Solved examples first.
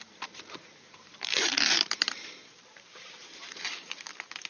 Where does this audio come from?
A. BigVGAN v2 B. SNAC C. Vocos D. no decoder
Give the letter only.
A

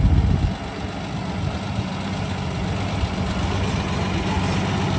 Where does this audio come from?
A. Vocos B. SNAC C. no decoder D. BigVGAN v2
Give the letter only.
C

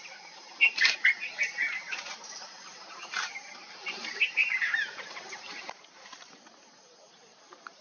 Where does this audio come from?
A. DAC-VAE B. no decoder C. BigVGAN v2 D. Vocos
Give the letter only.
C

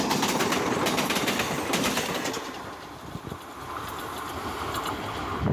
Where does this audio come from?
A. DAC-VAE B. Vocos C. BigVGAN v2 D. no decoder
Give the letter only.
D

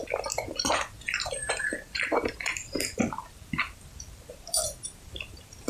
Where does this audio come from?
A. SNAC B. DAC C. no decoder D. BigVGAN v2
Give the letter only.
D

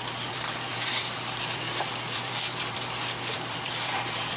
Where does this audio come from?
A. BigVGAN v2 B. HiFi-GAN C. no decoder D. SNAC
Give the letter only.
A